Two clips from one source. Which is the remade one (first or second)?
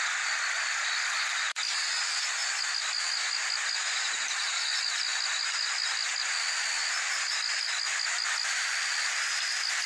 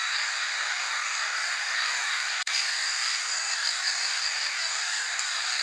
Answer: second